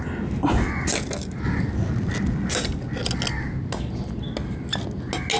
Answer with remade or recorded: recorded